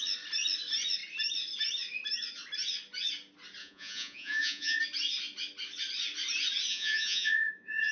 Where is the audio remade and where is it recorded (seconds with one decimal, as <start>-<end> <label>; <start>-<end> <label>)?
0.0-3.6 recorded; 3.6-4.8 remade; 4.8-6.7 recorded; 6.7-7.9 remade